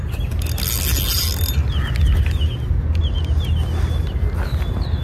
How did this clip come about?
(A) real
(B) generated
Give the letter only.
A